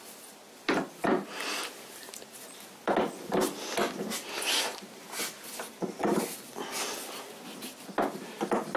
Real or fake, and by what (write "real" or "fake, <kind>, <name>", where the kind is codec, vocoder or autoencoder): real